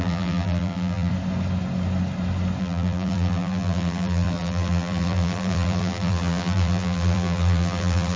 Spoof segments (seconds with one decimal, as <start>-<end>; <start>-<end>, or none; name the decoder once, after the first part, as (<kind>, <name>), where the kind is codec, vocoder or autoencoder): 0.0-1.1 (vocoder, BigVGAN v2); 2.6-8.2